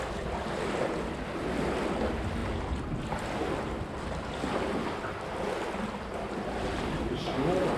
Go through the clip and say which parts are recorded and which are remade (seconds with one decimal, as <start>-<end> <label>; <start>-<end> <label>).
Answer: 0.0-7.8 recorded